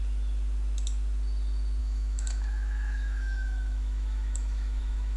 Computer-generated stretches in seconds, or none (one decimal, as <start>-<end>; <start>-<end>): 1.8-5.2